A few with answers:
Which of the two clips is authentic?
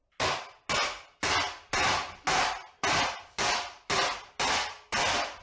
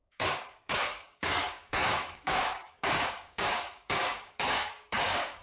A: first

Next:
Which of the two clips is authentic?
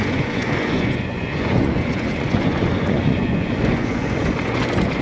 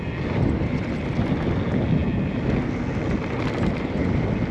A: second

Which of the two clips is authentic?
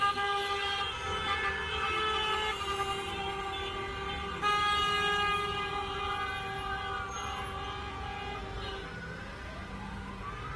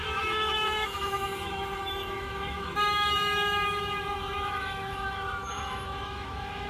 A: first